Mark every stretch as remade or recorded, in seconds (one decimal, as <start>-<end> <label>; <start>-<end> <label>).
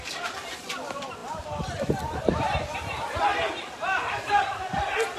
0.0-5.2 remade